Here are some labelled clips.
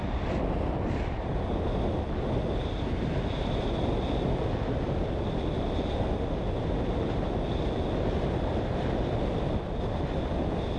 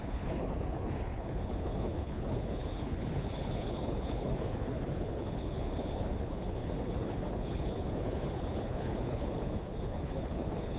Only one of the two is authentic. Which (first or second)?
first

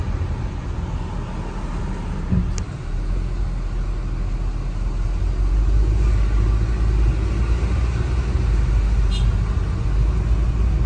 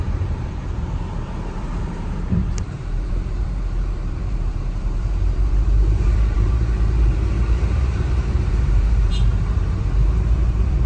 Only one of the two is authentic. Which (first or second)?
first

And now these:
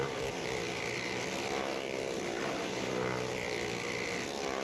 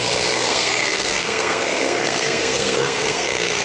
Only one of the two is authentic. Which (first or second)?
first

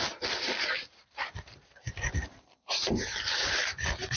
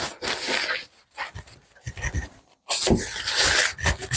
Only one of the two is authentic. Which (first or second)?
second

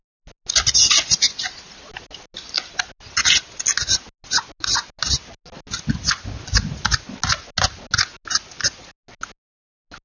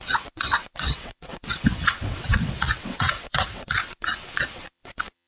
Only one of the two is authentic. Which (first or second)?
first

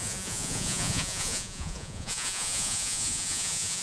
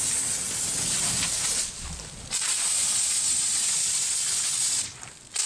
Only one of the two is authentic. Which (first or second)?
second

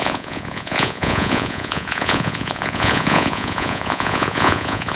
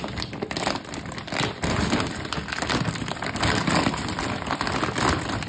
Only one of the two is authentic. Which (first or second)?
second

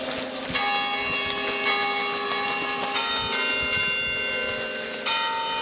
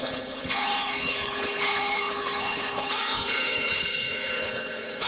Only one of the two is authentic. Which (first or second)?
first